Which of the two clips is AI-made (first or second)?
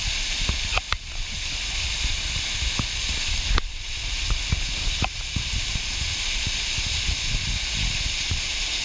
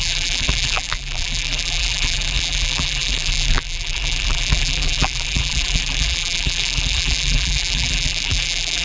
second